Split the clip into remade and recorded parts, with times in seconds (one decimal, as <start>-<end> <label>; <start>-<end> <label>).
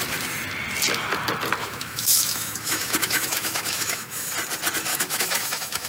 0.0-1.6 recorded; 1.6-4.3 remade; 4.3-4.9 recorded; 4.9-5.9 remade